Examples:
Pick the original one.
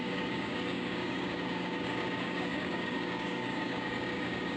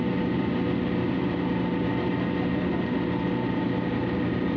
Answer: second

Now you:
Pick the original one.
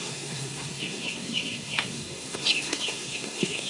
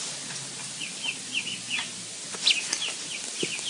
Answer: second